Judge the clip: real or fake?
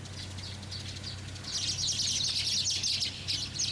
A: real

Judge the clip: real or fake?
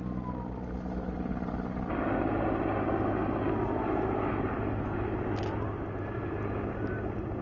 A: real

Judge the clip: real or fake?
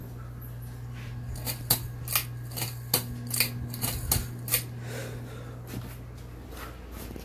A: real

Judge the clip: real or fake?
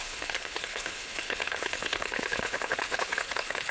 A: fake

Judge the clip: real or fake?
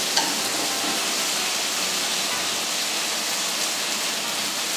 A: real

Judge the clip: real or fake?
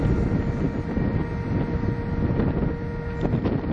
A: real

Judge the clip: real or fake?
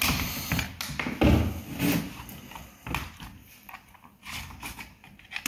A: real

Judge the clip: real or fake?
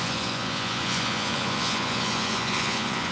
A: fake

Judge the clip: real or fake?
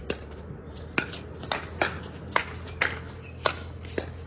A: real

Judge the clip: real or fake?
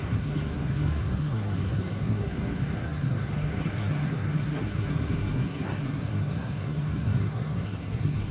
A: fake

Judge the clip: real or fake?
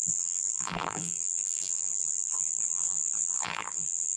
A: fake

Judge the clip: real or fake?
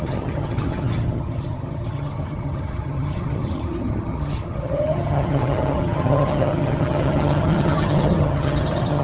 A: fake